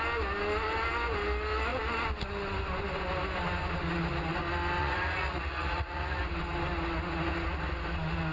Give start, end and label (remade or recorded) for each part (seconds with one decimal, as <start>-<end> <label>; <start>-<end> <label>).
0.0-4.8 recorded; 4.8-6.2 remade; 6.2-8.3 recorded